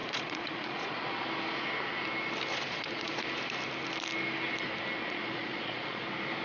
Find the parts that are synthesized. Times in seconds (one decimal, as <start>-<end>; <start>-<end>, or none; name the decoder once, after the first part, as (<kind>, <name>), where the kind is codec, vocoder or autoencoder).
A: 0.0-1.2 (vocoder, Vocos); 2.5-3.2; 5.0-6.0